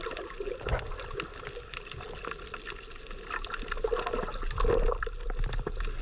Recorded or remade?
recorded